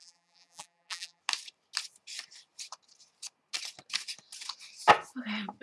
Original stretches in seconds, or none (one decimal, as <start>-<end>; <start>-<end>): 1.2-5.6